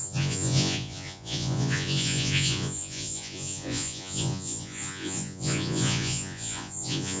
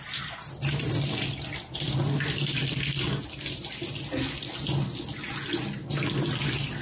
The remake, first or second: first